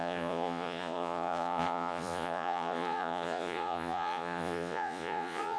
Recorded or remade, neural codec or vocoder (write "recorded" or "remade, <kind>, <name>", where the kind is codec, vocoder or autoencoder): remade, vocoder, Vocos